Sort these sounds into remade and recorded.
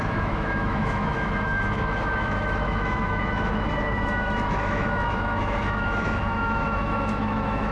remade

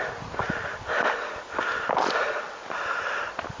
remade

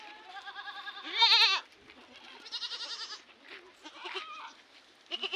recorded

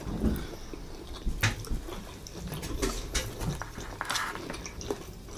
recorded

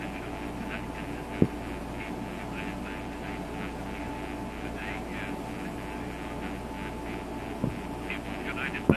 recorded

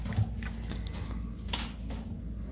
recorded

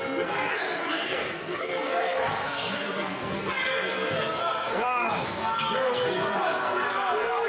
remade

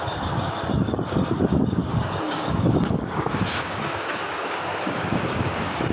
remade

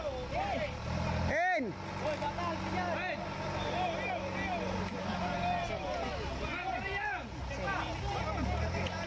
recorded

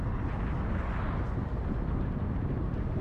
recorded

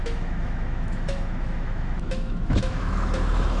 remade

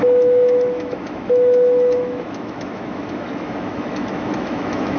remade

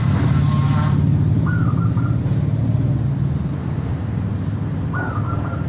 recorded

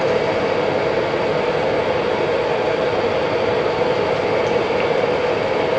recorded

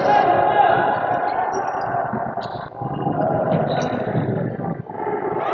recorded